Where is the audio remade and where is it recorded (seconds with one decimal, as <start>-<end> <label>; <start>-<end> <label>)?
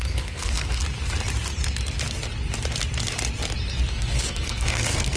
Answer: 0.0-0.8 remade; 0.8-3.9 recorded; 3.9-5.2 remade